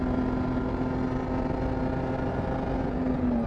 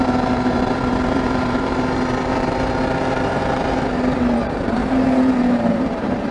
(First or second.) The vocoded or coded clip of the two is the second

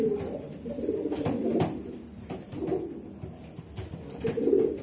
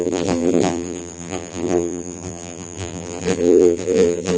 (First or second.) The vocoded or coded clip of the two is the second